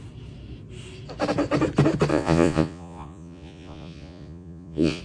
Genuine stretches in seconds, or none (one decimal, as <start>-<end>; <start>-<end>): 0.0-2.1